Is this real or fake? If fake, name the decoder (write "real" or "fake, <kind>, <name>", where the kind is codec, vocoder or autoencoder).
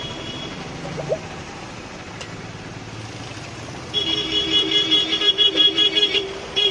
fake, vocoder, BigVGAN v2